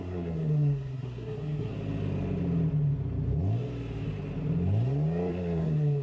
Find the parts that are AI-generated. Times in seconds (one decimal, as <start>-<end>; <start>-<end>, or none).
0.0-1.7; 5.3-6.0